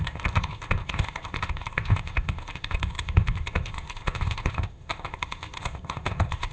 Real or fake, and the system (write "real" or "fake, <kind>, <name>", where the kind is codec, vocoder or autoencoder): fake, codec, ZipCodec